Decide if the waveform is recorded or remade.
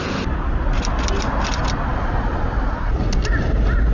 recorded